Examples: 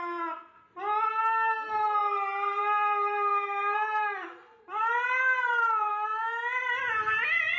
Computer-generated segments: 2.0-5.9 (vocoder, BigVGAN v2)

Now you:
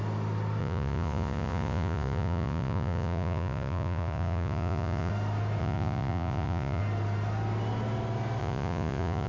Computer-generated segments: 0.6-5.1 (vocoder, Vocos); 5.6-6.8; 8.4-9.3